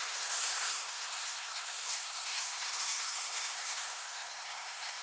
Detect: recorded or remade remade